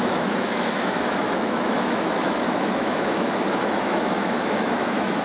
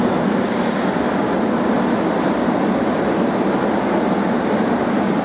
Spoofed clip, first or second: first